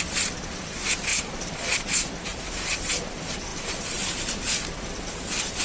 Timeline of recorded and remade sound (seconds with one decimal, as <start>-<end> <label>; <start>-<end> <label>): 0.0-1.1 recorded; 1.1-1.8 remade; 1.8-2.3 recorded; 2.3-2.9 remade; 2.9-3.5 recorded; 3.5-4.3 remade; 4.3-5.6 recorded